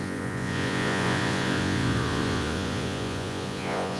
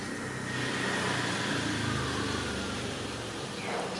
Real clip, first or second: second